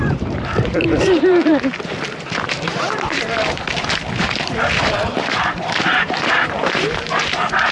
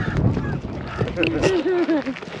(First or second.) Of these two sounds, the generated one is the first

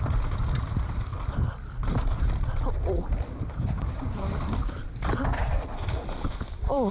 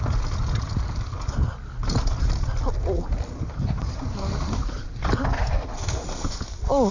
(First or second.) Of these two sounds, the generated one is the first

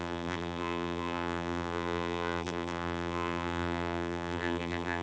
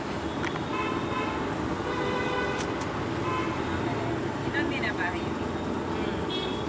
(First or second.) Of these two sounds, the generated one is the first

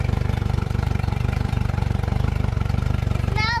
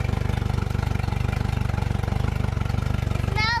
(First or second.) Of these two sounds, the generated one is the first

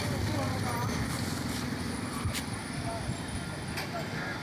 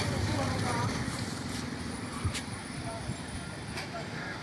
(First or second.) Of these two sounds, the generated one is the second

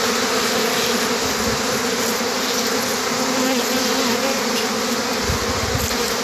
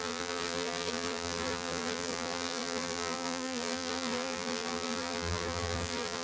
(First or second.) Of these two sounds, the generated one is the second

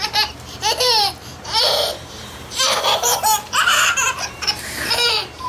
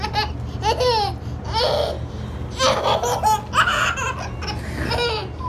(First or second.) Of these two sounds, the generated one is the first